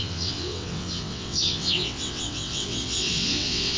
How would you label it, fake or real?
fake